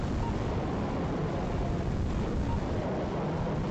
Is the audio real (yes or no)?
yes